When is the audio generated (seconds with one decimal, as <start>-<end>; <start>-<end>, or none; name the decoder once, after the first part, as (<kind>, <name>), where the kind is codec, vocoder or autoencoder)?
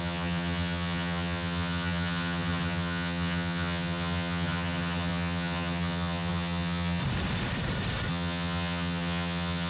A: 0.0-7.0 (vocoder, HiFi-GAN); 8.1-9.7